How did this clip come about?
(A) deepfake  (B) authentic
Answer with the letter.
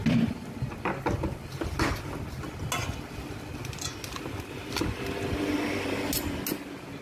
B